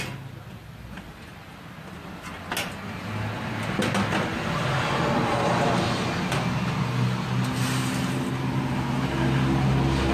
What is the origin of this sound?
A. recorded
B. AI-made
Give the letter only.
A